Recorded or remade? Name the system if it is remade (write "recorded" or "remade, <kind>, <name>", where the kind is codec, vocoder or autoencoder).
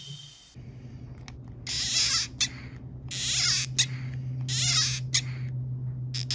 recorded